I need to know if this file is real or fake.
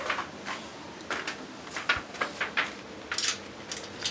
real